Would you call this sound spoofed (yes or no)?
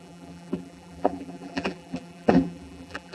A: yes